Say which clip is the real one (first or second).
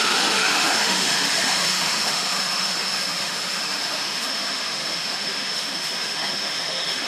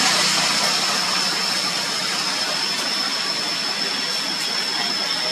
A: second